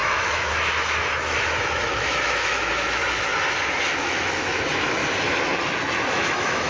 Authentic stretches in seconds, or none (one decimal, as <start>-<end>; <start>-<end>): 3.3-3.9; 5.0-6.1